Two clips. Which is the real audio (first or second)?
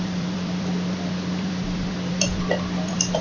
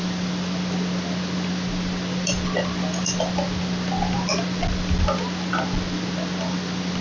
second